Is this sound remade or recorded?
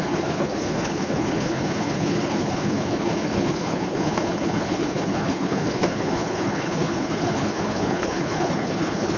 remade